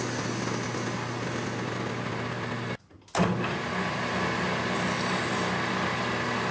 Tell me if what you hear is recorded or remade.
recorded